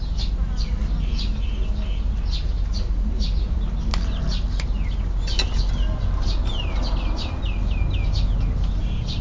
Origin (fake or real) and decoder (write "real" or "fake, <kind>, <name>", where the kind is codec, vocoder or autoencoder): real